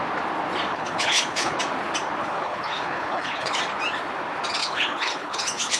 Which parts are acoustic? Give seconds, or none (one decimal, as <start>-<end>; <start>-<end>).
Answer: 0.0-0.7; 1.6-2.2; 3.6-4.6